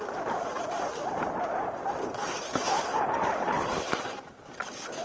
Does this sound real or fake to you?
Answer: real